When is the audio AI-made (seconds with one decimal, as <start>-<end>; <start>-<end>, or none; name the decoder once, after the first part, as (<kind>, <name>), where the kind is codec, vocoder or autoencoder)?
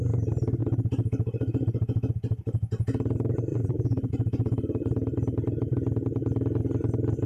3.5-4.1 (vocoder, BigVGAN v2)